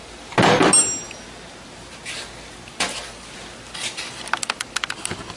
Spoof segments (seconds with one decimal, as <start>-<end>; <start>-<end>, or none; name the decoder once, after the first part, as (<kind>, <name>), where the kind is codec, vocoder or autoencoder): none